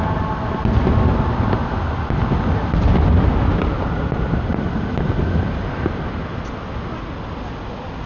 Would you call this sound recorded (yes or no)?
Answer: yes